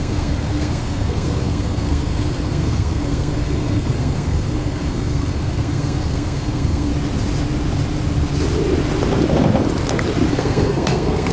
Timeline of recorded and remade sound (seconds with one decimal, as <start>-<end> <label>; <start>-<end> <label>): 0.0-6.9 remade; 6.9-10.3 recorded; 10.3-11.3 remade